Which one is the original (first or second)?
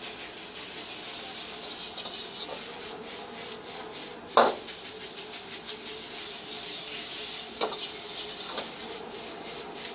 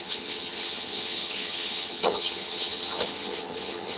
first